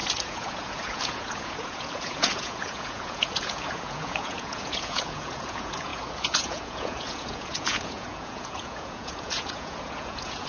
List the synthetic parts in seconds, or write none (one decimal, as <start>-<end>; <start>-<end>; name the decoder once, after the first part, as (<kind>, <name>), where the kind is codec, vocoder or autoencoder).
0.0-10.5 (vocoder, Vocos)